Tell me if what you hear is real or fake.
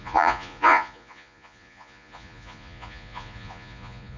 fake